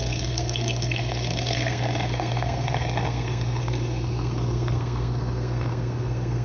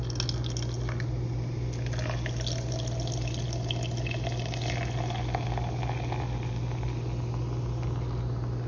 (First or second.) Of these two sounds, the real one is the second